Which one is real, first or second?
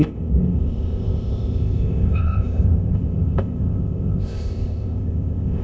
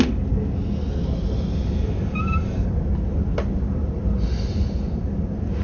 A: second